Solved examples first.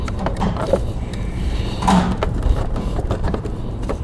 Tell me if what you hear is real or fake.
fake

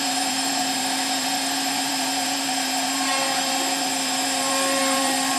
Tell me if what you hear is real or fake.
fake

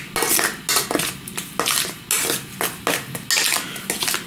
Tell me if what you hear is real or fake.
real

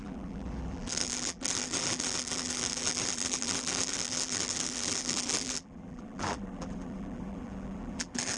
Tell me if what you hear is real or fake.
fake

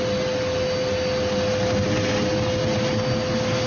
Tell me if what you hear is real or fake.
real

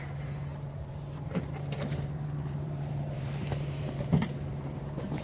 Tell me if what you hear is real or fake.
fake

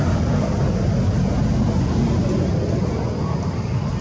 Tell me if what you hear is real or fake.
real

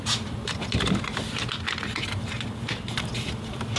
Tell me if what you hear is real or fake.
fake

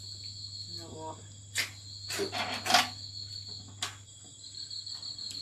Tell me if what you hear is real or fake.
real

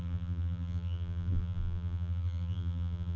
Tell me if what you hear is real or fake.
fake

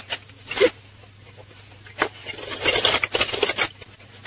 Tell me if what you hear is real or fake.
real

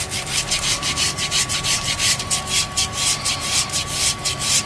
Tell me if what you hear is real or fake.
fake